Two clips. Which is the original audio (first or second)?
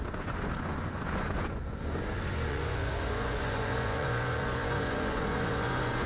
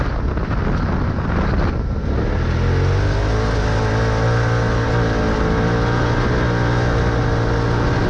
second